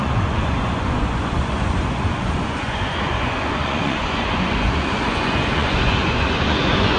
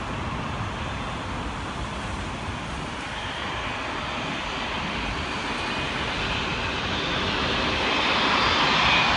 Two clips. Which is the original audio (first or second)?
second